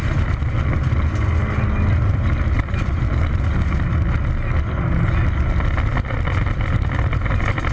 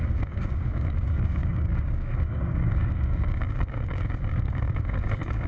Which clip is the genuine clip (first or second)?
first